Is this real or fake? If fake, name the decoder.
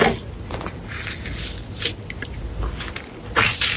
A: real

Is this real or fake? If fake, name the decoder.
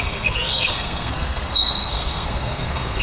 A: fake, codec, SNAC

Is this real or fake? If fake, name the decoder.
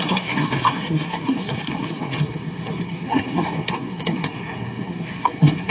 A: fake, codec, SNAC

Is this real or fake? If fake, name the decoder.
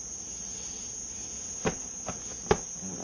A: real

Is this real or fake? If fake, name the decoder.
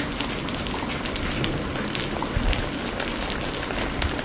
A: real